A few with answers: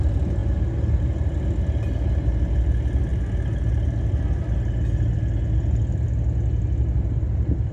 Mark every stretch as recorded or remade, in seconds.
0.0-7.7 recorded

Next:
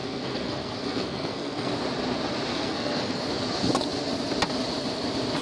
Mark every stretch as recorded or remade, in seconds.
0.0-1.7 remade; 1.7-2.5 recorded; 2.5-3.2 remade; 3.2-5.4 recorded

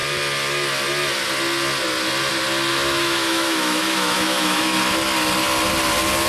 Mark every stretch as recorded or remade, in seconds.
0.0-2.7 recorded; 2.7-4.8 remade; 4.8-6.3 recorded

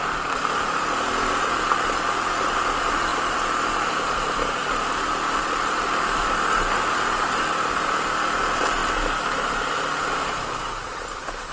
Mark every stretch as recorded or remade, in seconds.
0.0-4.6 remade; 4.6-5.4 recorded; 5.4-8.8 remade; 8.8-9.5 recorded; 9.5-11.5 remade

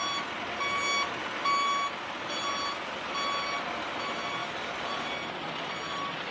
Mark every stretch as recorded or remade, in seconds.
0.0-6.3 recorded

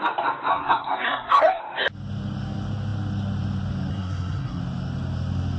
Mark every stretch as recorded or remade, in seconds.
0.0-0.5 recorded; 0.5-1.6 remade; 1.6-3.9 recorded; 3.9-4.6 remade; 4.6-5.6 recorded